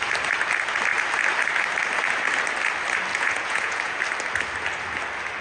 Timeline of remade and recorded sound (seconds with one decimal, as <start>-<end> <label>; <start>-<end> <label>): 0.0-3.1 recorded; 3.1-4.0 remade; 4.0-5.4 recorded